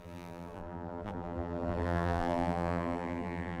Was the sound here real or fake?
fake